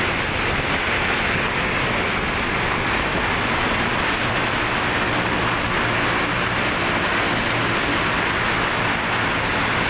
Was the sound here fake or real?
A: real